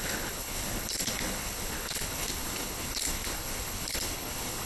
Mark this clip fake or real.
fake